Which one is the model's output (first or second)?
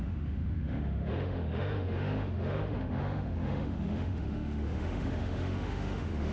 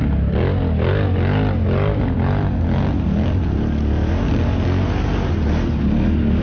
first